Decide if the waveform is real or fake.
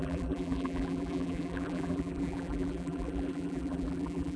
fake